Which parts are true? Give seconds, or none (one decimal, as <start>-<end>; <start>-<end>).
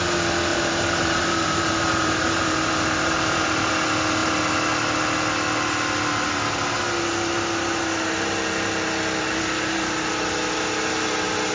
0.0-0.5; 3.7-11.5